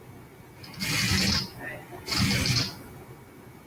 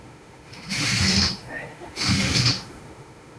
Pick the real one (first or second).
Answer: first